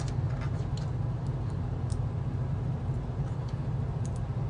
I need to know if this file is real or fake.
real